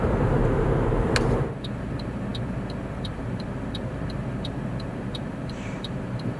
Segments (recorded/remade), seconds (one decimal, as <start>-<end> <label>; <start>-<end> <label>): 0.0-0.4 remade; 0.4-1.3 recorded; 1.3-6.4 remade